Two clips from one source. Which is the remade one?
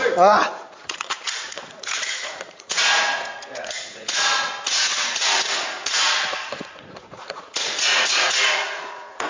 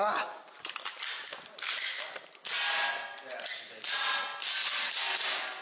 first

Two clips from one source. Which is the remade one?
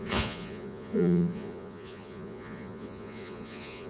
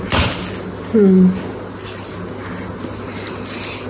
first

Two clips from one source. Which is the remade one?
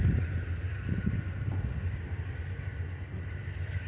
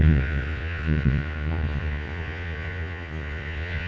second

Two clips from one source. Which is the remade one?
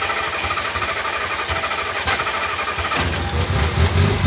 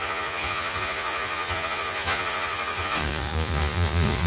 second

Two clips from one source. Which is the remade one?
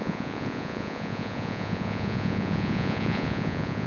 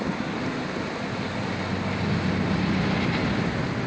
first